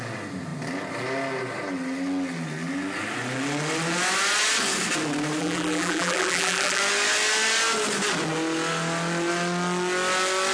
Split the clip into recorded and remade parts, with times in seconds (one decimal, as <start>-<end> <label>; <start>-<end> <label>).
0.0-5.4 recorded; 5.4-6.8 remade; 6.8-10.5 recorded